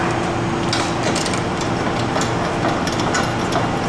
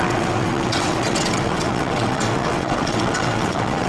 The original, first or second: first